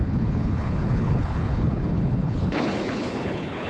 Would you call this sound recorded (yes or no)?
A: no